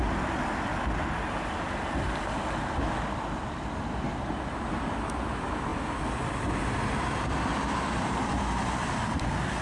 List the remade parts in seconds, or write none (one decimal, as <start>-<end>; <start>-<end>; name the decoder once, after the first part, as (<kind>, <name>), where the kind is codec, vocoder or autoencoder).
none